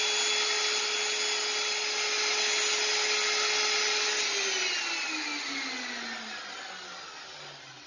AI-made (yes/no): no